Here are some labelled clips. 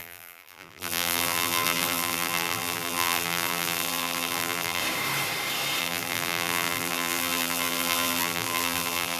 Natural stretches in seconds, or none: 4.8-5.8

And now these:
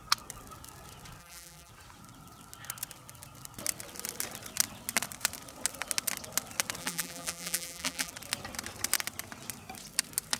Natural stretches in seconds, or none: 0.0-1.2; 1.7-6.8; 8.1-10.4

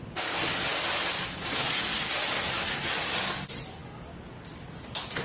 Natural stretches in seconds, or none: 0.0-5.2